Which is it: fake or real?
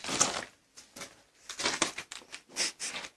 real